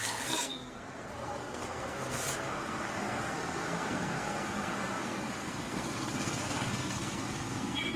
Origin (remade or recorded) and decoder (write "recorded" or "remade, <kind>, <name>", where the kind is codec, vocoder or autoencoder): remade, codec, SNAC